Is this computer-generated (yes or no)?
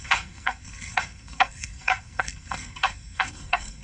yes